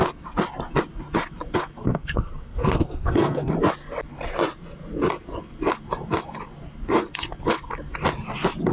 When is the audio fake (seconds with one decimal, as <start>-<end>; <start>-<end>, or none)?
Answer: 1.8-3.5